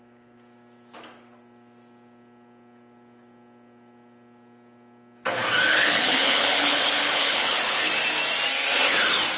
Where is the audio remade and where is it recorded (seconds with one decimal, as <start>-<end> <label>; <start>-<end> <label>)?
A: 0.0-5.7 recorded; 5.7-7.9 remade; 7.9-9.4 recorded